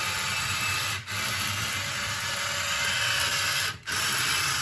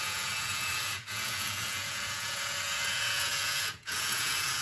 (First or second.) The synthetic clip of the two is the second